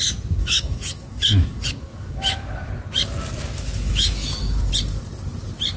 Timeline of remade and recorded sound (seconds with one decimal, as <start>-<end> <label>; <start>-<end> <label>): 0.0-0.4 recorded; 0.4-2.7 remade; 2.7-3.5 recorded; 3.5-4.7 remade; 4.7-5.8 recorded